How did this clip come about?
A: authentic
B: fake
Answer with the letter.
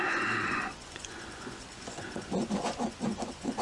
B